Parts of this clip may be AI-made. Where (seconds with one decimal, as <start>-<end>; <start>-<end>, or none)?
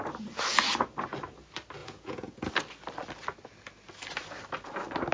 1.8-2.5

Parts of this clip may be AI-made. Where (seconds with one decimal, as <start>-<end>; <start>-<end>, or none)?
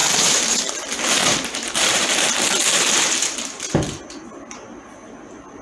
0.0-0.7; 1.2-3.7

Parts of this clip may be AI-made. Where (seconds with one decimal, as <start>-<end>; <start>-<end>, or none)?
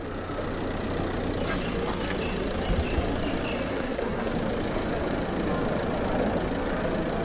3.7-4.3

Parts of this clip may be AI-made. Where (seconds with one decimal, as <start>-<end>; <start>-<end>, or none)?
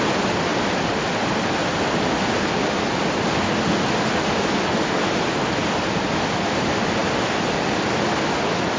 0.0-7.0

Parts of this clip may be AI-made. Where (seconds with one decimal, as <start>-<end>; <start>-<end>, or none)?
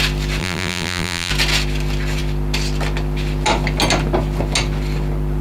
0.4-1.3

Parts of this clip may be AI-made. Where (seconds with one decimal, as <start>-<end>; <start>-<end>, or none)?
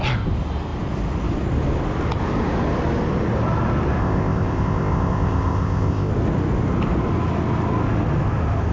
4.0-6.1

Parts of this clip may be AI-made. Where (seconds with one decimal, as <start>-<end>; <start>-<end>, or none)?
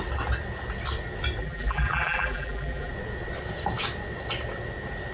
1.4-2.9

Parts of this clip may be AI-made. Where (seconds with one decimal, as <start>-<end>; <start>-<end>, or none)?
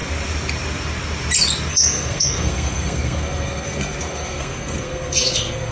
1.7-5.7